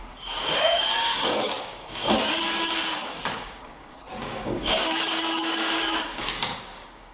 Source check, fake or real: fake